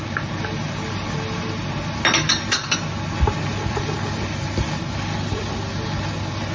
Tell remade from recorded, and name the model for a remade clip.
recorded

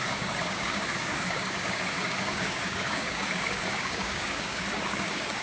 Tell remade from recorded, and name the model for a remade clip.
remade, codec, DAC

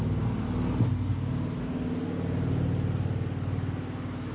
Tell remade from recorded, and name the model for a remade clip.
recorded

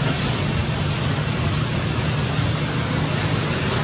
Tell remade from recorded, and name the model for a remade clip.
recorded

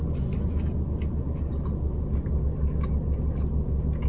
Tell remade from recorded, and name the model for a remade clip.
recorded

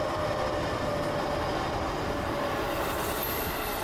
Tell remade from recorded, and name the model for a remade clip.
recorded